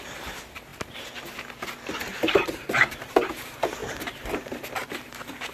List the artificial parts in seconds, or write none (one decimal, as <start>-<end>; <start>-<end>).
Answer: 2.1-3.3